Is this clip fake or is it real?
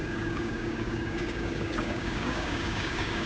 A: fake